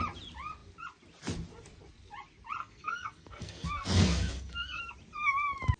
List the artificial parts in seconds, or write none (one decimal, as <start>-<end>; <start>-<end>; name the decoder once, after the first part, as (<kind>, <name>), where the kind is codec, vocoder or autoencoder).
2.6-4.8 (codec, SNAC)